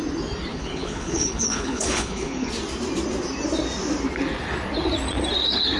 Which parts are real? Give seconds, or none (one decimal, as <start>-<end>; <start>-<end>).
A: 0.0-0.5; 2.5-5.8